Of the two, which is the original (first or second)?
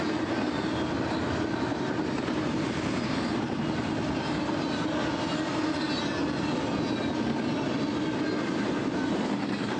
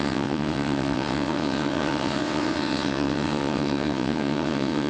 first